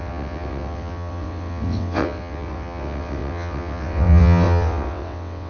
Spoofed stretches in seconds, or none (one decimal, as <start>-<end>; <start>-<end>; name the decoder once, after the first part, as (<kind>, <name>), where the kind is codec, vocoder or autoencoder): 0.0-5.5 (vocoder, WaveNeXt)